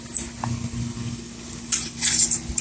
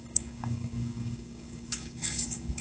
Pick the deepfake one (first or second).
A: second